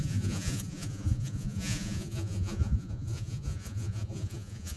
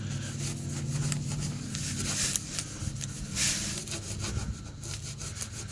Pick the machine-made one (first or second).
first